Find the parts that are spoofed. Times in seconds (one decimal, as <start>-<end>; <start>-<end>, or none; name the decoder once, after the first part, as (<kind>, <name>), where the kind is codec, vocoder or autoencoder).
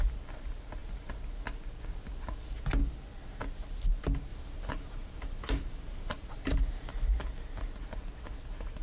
4.3-6.9 (vocoder, BigVGAN v2)